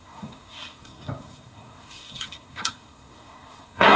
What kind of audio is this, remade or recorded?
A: remade